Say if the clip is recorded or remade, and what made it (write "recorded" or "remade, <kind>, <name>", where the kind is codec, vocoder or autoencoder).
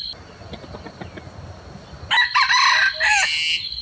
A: recorded